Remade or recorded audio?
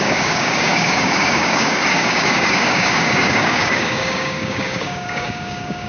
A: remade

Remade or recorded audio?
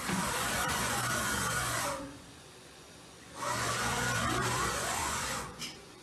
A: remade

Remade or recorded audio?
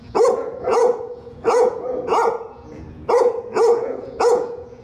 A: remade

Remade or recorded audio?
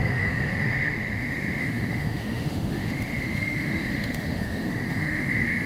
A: remade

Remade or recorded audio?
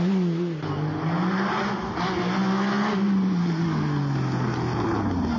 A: recorded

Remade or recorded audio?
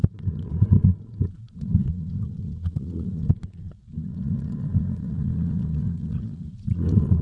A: remade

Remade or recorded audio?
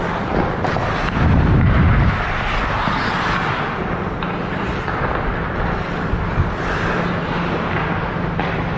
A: recorded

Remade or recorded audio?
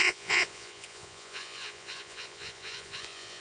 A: remade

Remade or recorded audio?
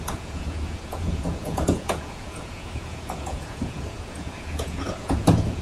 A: remade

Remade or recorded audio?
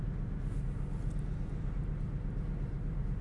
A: recorded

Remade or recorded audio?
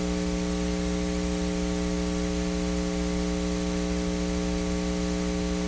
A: recorded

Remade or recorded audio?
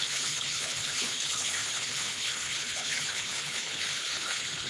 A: remade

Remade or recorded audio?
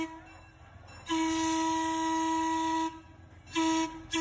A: recorded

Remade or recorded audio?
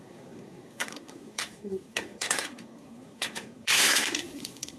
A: remade